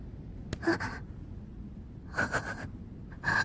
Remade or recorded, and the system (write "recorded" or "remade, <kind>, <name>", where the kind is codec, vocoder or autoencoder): recorded